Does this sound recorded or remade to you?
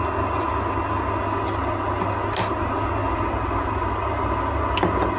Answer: recorded